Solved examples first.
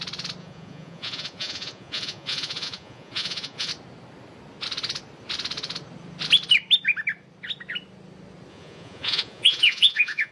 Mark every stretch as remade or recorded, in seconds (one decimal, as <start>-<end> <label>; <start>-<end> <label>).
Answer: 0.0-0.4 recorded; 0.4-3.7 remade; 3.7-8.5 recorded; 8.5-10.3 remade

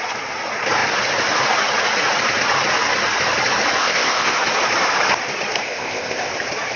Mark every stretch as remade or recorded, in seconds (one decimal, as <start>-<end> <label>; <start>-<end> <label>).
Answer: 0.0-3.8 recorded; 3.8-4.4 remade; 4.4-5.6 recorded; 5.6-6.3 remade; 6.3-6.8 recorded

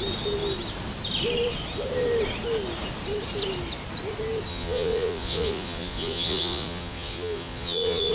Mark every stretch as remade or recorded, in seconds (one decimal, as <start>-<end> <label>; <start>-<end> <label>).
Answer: 0.0-4.5 recorded; 4.5-8.1 remade

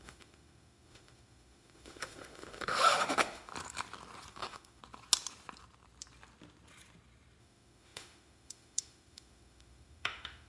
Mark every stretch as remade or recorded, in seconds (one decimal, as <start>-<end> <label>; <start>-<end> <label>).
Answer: 0.0-3.5 remade; 3.5-4.3 recorded; 4.3-4.8 remade; 4.8-7.4 recorded; 7.4-10.5 remade

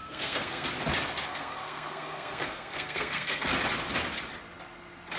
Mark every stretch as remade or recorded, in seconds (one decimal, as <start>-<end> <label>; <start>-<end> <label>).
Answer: 0.0-0.7 remade; 0.7-1.3 recorded; 1.3-3.5 remade; 3.5-5.2 recorded